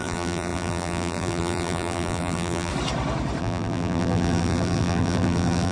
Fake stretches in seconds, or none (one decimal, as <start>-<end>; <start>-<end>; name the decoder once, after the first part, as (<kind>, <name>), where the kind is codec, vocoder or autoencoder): 0.0-2.7 (vocoder, BigVGAN v2); 3.4-5.7